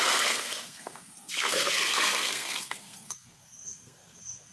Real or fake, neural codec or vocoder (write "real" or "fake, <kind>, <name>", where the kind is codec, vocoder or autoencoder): fake, codec, SNAC